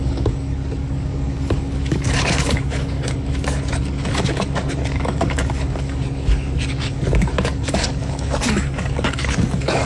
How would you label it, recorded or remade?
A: remade